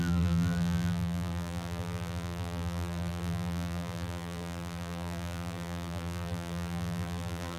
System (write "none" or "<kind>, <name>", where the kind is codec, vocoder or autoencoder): vocoder, BigVGAN v2